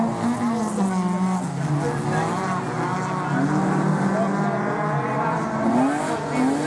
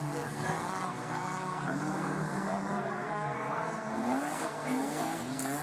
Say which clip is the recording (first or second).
first